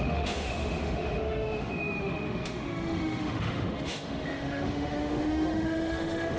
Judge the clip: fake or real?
fake